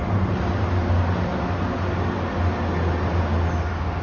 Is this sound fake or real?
real